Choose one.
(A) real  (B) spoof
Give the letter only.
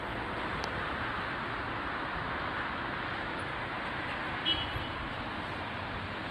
A